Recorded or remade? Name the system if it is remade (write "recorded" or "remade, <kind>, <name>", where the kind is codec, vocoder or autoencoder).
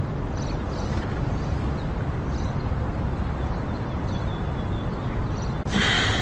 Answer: recorded